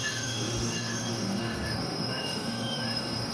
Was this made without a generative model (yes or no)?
no